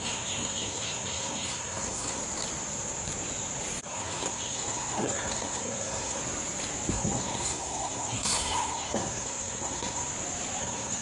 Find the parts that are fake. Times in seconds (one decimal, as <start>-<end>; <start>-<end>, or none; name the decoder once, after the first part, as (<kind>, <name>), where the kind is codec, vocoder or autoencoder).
0.0-2.2 (codec, SNAC); 3.8-6.2; 6.9-10.0; 10.6-11.0